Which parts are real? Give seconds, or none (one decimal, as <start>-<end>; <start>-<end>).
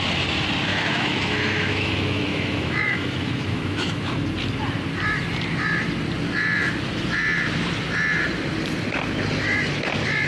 0.0-0.7; 4.2-10.3